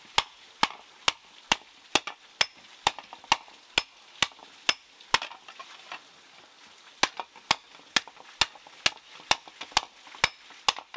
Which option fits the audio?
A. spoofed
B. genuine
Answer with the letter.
B